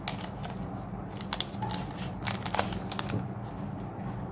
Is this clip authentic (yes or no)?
yes